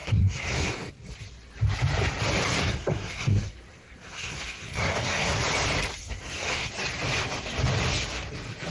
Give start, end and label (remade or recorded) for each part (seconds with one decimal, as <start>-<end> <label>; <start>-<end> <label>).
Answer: 0.0-0.9 remade; 0.9-2.6 recorded; 2.6-5.4 remade; 5.4-6.0 recorded; 6.0-6.7 remade; 6.7-8.7 recorded